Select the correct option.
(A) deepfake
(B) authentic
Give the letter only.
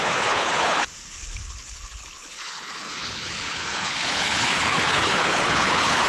A